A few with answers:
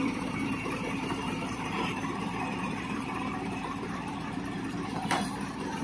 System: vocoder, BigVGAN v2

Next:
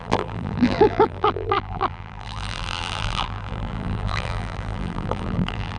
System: vocoder, BigVGAN v2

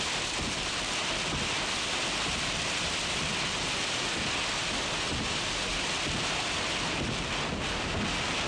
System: none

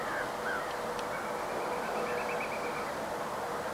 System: none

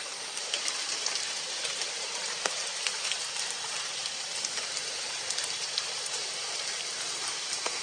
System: vocoder, BigVGAN v2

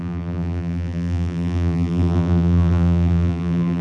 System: vocoder, BigVGAN v2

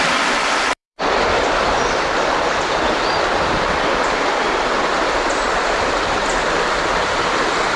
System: vocoder, BigVGAN v2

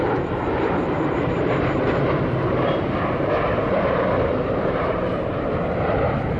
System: vocoder, BigVGAN v2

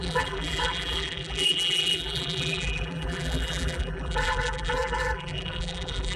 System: vocoder, BigVGAN v2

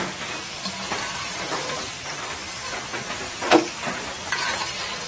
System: none